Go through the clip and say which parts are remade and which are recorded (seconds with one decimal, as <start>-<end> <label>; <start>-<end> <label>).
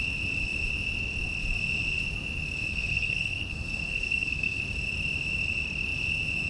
0.0-2.7 recorded; 2.7-4.6 remade; 4.6-6.5 recorded